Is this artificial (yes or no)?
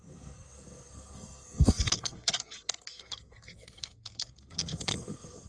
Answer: yes